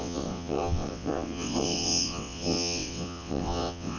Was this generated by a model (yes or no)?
yes